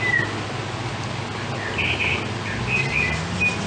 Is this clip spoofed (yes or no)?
no